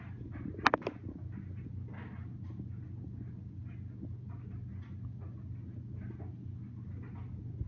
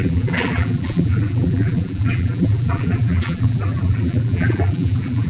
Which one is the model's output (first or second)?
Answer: second